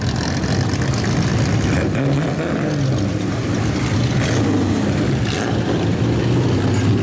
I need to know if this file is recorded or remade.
recorded